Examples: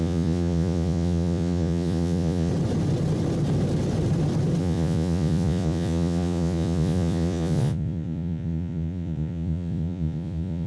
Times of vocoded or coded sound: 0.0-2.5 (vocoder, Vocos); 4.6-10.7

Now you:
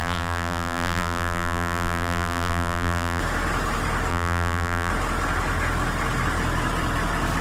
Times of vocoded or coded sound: 0.0-3.2 (vocoder, BigVGAN v2); 4.1-4.9

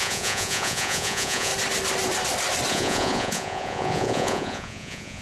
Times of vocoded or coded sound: 0.0-1.5 (vocoder, Vocos); 2.7-5.2

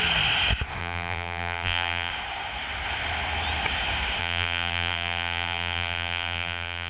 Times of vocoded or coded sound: 0.8-2.1 (vocoder, BigVGAN v2); 4.2-6.9